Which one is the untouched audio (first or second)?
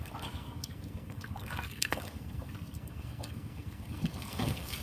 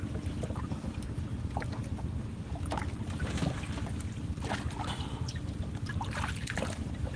second